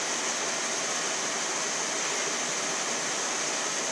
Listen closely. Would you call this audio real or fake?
real